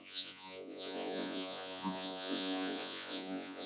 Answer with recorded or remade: remade